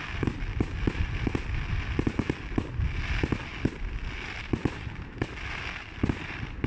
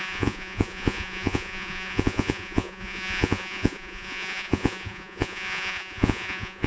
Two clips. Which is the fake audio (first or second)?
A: second